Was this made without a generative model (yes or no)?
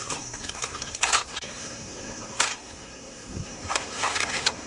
no